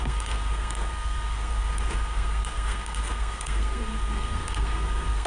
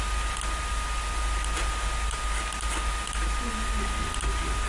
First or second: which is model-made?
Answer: first